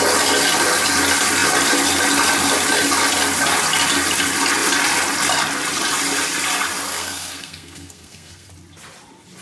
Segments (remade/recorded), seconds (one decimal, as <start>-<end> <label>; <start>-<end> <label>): 0.0-6.9 recorded; 6.9-8.5 remade; 8.5-9.4 recorded